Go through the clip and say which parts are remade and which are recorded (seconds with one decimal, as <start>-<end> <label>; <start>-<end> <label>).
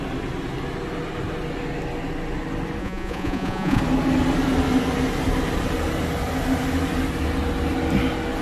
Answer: 0.0-2.8 recorded; 2.8-3.8 remade; 3.8-8.4 recorded